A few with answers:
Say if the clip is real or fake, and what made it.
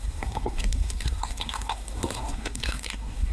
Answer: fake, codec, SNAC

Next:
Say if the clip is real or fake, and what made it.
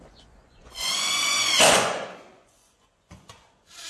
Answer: fake, vocoder, Vocos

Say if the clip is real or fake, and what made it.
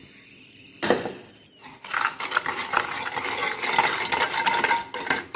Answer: real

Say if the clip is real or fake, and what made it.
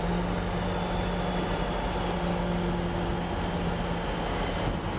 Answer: real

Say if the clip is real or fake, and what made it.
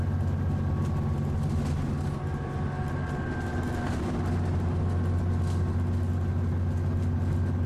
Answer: real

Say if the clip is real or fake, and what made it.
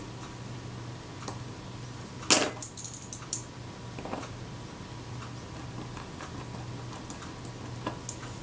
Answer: real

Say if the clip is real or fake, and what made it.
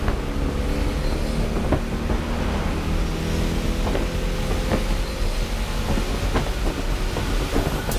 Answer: real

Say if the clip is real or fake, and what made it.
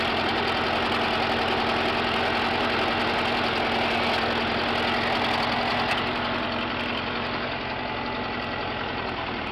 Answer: real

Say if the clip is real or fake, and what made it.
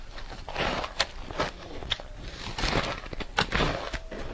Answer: fake, vocoder, BigVGAN v2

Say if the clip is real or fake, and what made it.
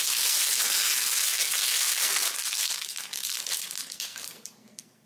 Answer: fake, codec, SNAC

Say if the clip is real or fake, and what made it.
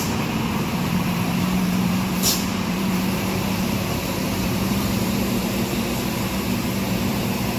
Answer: fake, vocoder, BigVGAN v2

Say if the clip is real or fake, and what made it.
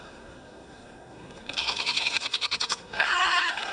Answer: fake, codec, SNAC